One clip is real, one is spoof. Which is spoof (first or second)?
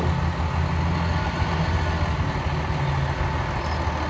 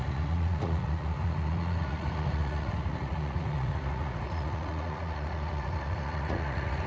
second